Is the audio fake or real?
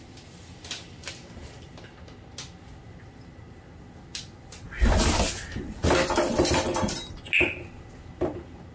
real